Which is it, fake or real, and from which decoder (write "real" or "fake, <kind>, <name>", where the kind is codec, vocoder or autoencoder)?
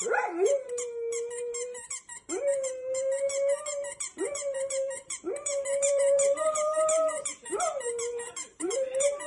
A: fake, vocoder, BigVGAN v2